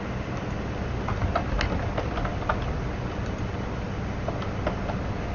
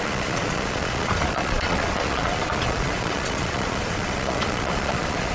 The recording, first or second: first